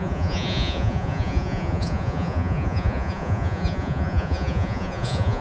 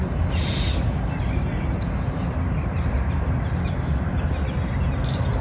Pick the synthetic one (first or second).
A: first